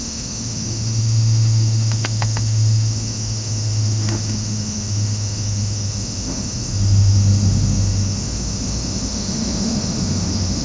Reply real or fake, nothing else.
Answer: fake